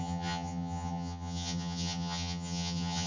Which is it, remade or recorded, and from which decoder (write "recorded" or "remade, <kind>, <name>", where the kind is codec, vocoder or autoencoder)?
remade, vocoder, HiFi-GAN